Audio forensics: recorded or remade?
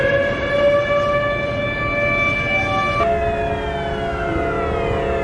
recorded